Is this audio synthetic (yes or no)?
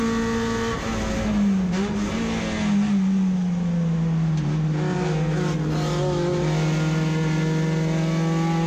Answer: no